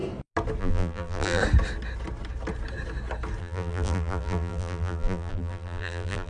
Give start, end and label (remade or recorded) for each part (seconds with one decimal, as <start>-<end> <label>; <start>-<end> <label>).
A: 0.0-0.6 recorded; 0.6-1.4 remade; 1.4-3.4 recorded; 3.4-6.3 remade

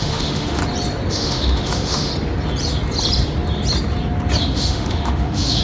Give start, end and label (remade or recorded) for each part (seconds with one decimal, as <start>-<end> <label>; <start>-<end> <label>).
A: 0.0-0.6 remade; 0.6-1.1 recorded; 1.1-2.1 remade; 2.1-4.4 recorded; 4.4-5.6 remade

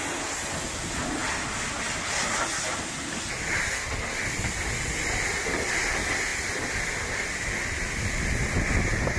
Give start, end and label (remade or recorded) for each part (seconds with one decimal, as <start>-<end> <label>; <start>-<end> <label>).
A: 0.0-9.2 recorded

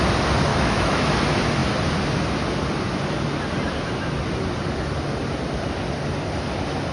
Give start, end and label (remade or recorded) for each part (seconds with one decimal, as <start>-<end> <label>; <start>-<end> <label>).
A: 0.0-0.5 recorded; 0.5-1.1 remade; 1.1-6.9 recorded

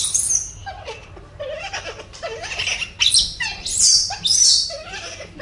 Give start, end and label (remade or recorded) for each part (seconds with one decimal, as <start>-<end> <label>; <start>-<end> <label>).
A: 0.0-5.4 recorded

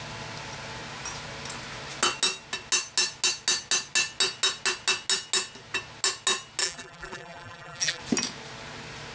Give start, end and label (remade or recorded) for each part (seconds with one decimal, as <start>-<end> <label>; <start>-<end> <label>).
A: 0.0-6.6 recorded; 6.6-8.0 remade; 8.0-9.1 recorded

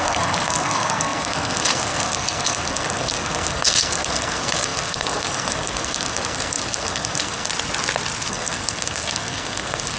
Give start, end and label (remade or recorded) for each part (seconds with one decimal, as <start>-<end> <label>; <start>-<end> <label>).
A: 0.0-7.5 remade; 7.5-8.3 recorded; 8.3-10.0 remade